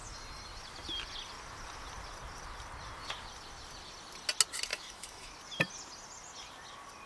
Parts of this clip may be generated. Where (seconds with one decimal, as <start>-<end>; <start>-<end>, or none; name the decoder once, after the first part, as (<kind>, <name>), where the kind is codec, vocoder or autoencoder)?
4.7-5.3 (autoencoder, DAC-VAE)